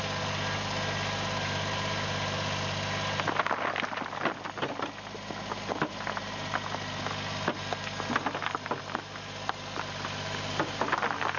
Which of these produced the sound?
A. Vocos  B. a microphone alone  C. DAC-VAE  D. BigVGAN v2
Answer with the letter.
B